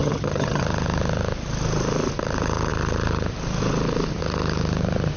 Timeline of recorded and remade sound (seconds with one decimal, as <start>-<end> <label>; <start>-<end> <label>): 0.0-0.6 remade; 0.6-5.2 recorded